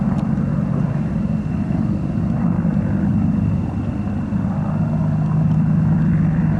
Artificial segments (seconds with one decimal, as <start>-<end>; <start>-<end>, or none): none